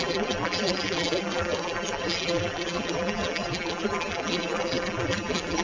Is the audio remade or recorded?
remade